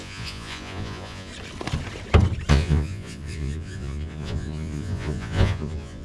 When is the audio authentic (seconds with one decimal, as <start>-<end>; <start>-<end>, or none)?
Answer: 1.3-2.5